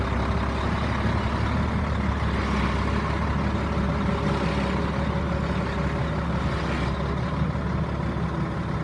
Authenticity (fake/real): real